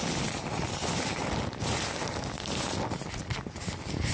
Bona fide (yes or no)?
yes